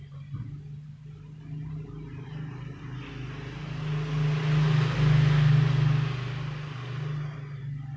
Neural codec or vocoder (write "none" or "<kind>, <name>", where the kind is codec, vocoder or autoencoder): none